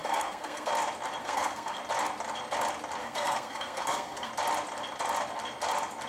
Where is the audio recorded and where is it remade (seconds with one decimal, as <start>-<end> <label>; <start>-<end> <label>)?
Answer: 0.0-0.7 remade; 0.7-1.2 recorded; 1.2-1.8 remade; 1.8-3.0 recorded; 3.0-4.3 remade; 4.3-6.1 recorded